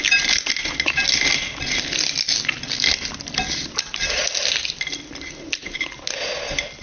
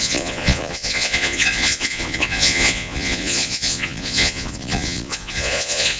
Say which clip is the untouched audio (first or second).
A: first